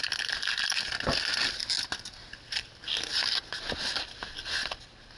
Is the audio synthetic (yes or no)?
no